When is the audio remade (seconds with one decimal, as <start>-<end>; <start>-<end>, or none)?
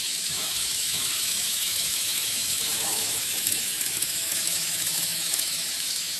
0.0-6.2